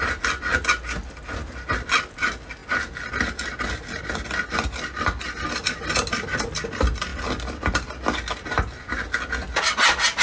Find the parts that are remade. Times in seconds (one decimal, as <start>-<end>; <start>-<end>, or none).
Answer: none

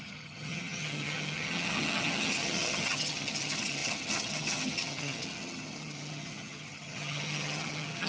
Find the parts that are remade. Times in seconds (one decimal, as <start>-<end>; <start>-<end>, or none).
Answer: 0.0-8.1

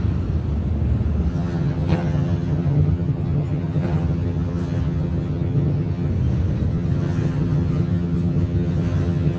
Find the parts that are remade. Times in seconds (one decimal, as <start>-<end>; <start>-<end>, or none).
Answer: 1.3-6.1; 6.7-9.4

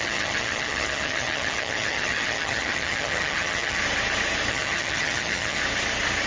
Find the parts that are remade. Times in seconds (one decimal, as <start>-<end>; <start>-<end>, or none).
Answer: 0.0-3.8; 4.5-5.6